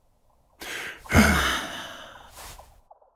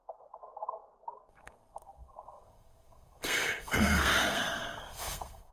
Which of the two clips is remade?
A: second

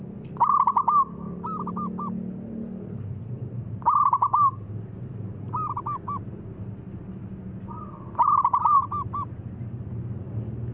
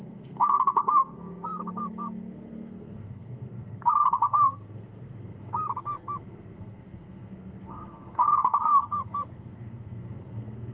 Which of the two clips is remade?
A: second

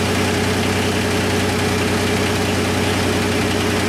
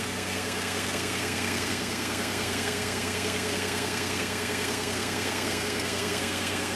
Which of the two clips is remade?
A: second